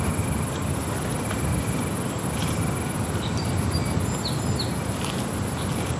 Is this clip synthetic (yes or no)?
no